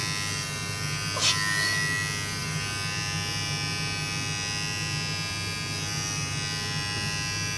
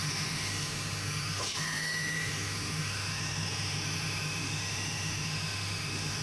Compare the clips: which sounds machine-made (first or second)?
second